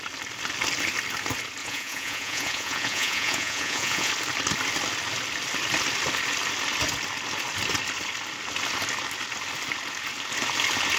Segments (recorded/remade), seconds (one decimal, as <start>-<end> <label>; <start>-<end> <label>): 0.0-1.6 recorded; 1.6-4.1 remade; 4.1-11.0 recorded